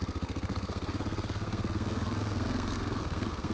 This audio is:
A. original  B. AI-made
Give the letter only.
B